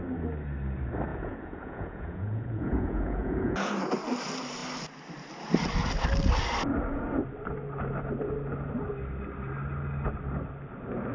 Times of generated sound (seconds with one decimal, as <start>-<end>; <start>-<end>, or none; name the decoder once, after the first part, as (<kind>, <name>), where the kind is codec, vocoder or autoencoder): 1.1-3.7 (vocoder, Vocos)